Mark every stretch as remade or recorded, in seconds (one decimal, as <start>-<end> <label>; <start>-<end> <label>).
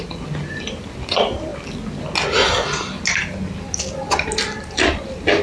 0.0-5.4 recorded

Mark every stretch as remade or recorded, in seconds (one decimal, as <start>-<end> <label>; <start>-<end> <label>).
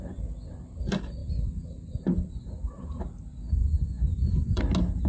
0.0-3.6 recorded; 3.6-4.6 remade; 4.6-5.1 recorded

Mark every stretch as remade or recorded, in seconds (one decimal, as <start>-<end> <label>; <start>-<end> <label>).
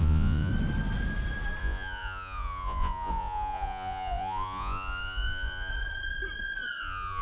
0.0-0.5 remade; 0.5-1.6 recorded; 1.6-5.7 remade; 5.7-6.8 recorded; 6.8-7.2 remade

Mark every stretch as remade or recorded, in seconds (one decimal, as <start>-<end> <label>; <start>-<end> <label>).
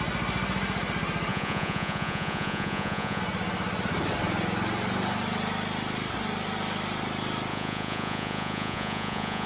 0.0-1.3 recorded; 1.3-3.2 remade; 3.2-7.5 recorded; 7.5-9.5 remade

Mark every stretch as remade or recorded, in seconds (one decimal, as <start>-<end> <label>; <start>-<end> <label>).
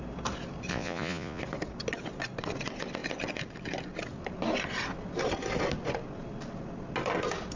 0.0-0.7 recorded; 0.7-1.4 remade; 1.4-7.6 recorded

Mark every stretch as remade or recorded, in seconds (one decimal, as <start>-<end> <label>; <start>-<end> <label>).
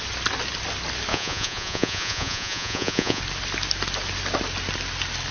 0.0-1.1 recorded; 1.1-3.2 remade; 3.2-5.3 recorded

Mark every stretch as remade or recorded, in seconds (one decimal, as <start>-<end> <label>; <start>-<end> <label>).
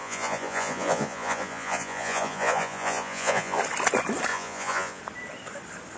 0.0-3.6 remade; 3.6-4.3 recorded; 4.3-5.0 remade; 5.0-6.0 recorded